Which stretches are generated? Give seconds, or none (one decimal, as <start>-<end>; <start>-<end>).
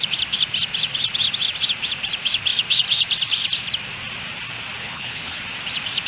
4.8-5.4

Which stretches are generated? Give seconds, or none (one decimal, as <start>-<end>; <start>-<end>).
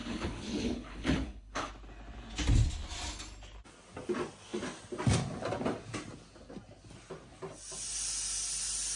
0.0-1.7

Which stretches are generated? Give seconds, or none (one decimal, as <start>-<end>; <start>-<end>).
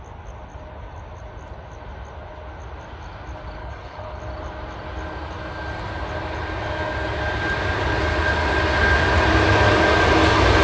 3.6-4.2